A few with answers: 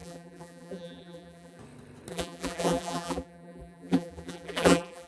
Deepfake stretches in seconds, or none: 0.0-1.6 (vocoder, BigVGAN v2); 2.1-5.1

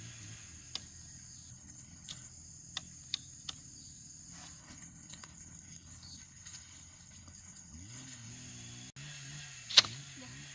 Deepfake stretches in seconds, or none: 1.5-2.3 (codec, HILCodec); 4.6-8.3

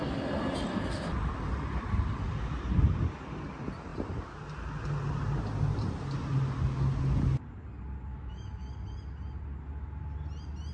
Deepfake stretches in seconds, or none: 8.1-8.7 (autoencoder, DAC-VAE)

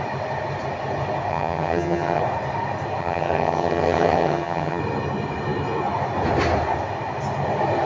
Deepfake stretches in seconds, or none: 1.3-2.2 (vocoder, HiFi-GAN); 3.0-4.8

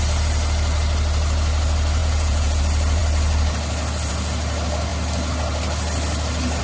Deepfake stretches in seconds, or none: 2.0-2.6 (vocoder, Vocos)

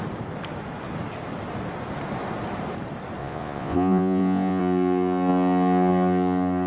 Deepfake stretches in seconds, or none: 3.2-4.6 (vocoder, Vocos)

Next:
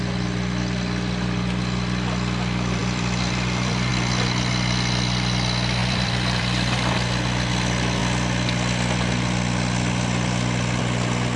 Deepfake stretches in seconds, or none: 2.8-3.9 (vocoder, BigVGAN v2); 5.8-6.9